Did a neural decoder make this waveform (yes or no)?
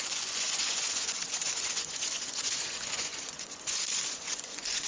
yes